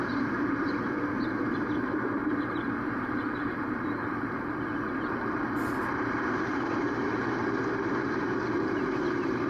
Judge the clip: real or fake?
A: fake